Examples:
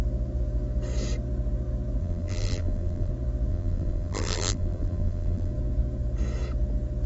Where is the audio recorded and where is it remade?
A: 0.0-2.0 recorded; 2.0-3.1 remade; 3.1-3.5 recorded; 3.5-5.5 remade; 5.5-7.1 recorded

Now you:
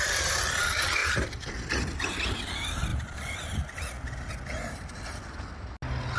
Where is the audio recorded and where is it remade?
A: 0.0-1.0 recorded; 1.0-1.5 remade; 1.5-6.2 recorded

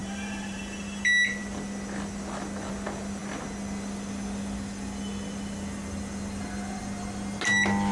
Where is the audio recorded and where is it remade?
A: 0.0-0.6 remade; 0.6-7.9 recorded

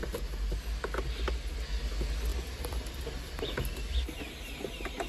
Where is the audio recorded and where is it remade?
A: 0.0-2.3 recorded; 2.3-4.2 remade; 4.2-5.1 recorded

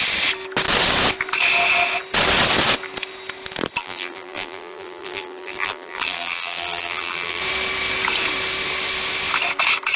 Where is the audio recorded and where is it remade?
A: 0.0-3.8 recorded; 3.8-7.4 remade; 7.4-10.0 recorded

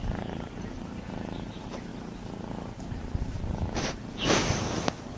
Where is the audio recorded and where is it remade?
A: 0.0-1.9 remade; 1.9-2.9 recorded; 2.9-5.2 remade